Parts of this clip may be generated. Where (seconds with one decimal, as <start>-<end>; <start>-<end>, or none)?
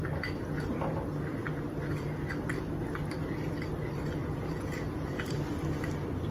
4.2-5.2